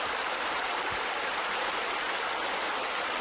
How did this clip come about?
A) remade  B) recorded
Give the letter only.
B